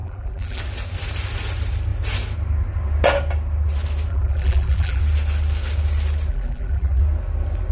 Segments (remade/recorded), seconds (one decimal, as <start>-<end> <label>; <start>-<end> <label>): 0.0-0.6 remade; 0.6-4.1 recorded; 4.1-5.0 remade; 5.0-6.3 recorded; 6.3-7.0 remade; 7.0-7.7 recorded